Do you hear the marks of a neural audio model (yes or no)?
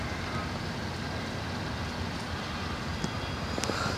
no